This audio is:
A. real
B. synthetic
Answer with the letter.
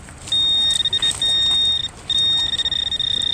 A